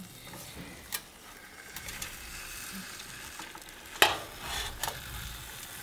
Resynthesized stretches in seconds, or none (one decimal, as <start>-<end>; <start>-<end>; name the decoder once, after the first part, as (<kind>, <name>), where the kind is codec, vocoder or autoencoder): 1.4-3.0 (vocoder, BigVGAN v2)